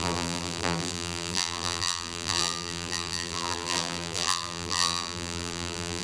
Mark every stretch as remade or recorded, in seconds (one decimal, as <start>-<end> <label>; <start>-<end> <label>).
0.0-6.0 remade

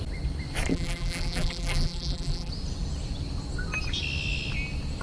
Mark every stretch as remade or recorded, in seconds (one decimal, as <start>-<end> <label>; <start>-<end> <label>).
0.0-0.7 recorded; 0.7-2.5 remade; 2.5-5.0 recorded

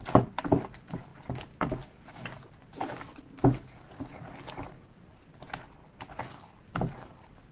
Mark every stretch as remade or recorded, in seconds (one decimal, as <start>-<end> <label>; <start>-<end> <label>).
0.0-4.1 recorded; 4.1-5.2 remade; 5.2-7.5 recorded

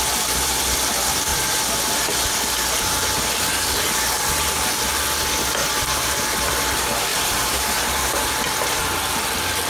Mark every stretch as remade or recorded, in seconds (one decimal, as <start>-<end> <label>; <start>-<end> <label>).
0.0-5.6 recorded; 5.6-6.5 remade; 6.5-7.1 recorded; 7.1-8.3 remade; 8.3-9.7 recorded

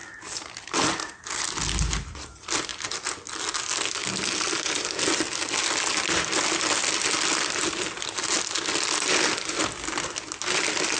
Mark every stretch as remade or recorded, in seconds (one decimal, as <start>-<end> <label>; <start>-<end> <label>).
0.0-11.0 recorded

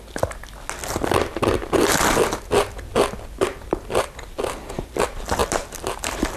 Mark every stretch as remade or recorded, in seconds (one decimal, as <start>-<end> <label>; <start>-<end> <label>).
0.0-6.4 recorded